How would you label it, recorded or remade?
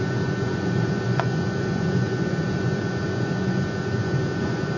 remade